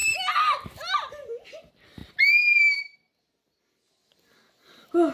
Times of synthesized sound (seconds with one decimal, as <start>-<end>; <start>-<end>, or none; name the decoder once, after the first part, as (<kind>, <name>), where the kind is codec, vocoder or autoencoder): none